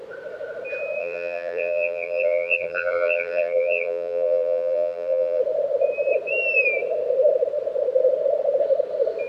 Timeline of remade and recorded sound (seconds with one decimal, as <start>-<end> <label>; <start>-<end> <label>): 0.0-1.0 recorded; 1.0-5.4 remade; 5.4-9.3 recorded